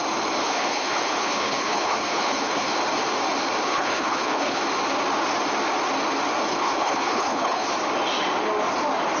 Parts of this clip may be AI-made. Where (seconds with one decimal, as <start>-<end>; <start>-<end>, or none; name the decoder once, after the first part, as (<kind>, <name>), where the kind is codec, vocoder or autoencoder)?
0.4-2.8 (codec, HILCodec); 3.7-4.6; 6.5-7.7